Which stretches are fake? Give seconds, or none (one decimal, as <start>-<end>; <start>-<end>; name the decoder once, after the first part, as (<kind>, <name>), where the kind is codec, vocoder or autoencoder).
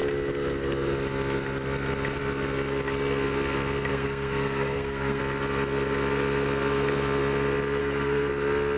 3.9-5.2 (codec, SNAC); 7.8-8.3